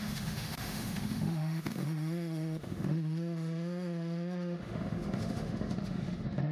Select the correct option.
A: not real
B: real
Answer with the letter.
A